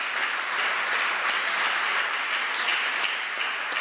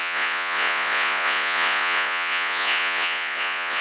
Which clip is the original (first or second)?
first